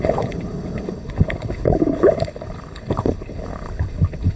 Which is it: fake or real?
fake